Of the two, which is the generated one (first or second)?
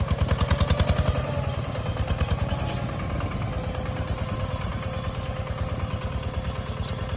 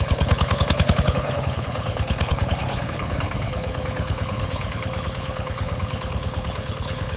second